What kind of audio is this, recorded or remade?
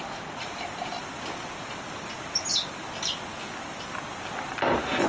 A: recorded